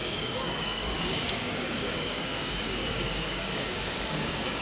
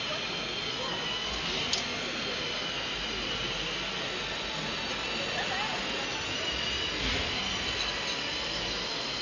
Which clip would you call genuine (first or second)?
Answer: second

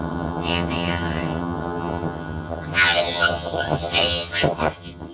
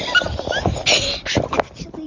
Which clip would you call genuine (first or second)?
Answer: second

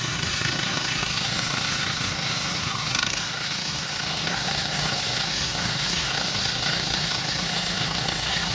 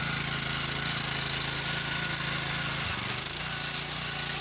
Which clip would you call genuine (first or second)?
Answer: second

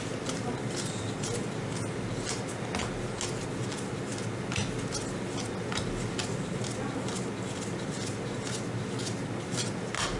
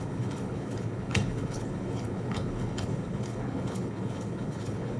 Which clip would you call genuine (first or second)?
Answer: first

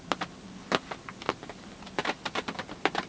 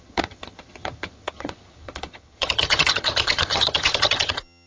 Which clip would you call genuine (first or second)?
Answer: first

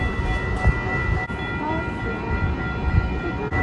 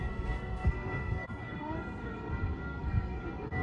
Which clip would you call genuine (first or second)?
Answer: first